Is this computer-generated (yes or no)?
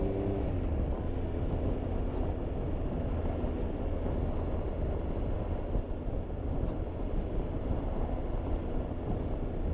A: no